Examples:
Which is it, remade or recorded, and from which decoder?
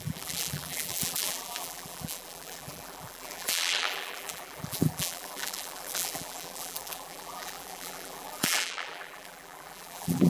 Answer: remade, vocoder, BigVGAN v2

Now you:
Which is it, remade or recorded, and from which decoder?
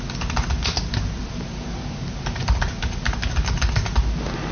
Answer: recorded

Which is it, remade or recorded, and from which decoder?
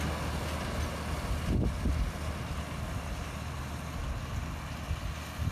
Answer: recorded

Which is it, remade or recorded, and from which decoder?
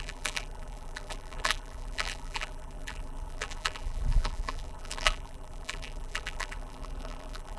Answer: remade, vocoder, BigVGAN v2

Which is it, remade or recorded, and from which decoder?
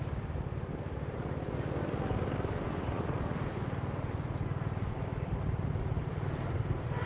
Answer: remade, vocoder, BigVGAN v2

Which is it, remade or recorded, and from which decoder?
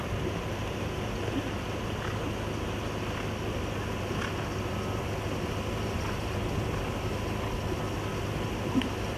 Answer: recorded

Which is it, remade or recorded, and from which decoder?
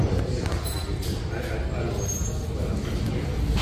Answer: recorded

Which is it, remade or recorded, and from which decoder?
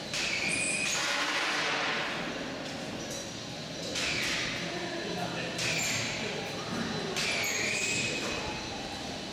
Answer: recorded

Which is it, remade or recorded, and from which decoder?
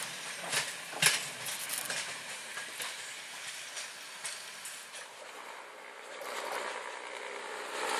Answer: recorded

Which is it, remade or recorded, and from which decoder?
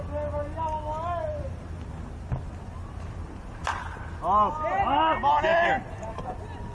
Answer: recorded